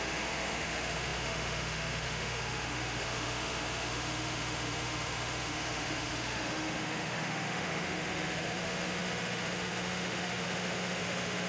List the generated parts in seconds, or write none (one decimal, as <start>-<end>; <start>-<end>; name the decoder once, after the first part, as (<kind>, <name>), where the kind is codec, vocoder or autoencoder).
0.0-11.5 (autoencoder, DAC-VAE)